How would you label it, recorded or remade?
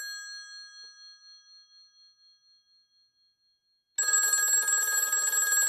recorded